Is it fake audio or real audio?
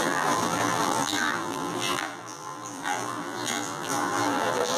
fake